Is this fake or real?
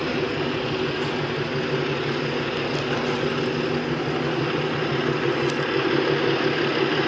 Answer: real